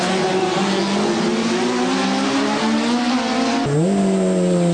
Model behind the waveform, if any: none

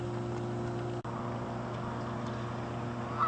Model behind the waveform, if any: none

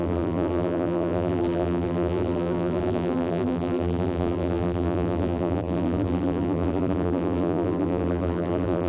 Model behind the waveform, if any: vocoder, BigVGAN v2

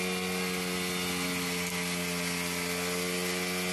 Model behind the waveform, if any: none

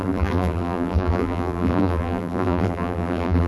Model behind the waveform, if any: vocoder, BigVGAN v2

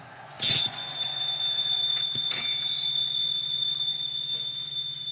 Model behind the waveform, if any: vocoder, Vocos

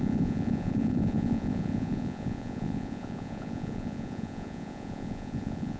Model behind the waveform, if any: vocoder, Vocos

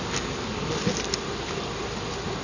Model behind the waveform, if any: none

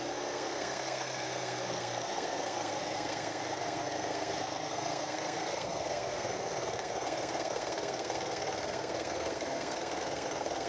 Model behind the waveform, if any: codec, SNAC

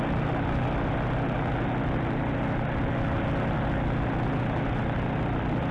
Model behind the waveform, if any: none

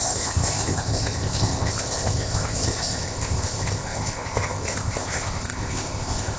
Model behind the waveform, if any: codec, ZipCodec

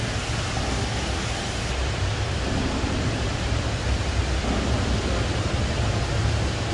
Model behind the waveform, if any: none